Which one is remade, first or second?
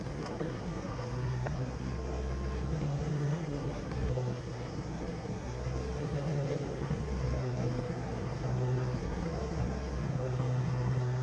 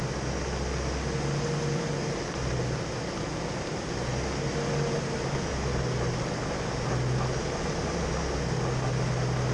first